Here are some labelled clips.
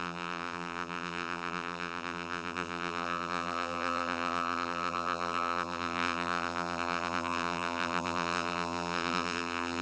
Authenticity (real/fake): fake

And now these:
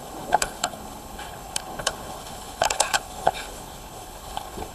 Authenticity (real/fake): fake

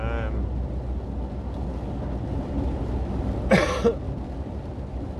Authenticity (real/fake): real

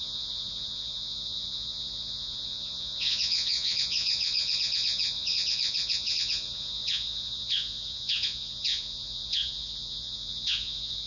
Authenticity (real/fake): fake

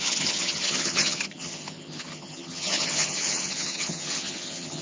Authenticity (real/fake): fake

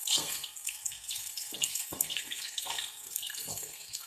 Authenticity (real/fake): fake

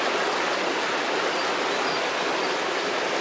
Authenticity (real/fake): real